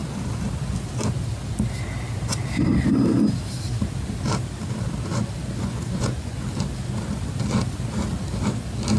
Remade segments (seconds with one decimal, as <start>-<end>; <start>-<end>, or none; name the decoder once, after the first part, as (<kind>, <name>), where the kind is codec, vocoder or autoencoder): 5.6-6.4 (vocoder, Vocos)